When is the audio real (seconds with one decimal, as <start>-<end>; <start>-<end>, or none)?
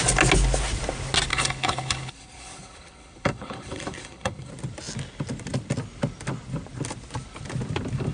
0.0-1.3; 4.5-8.1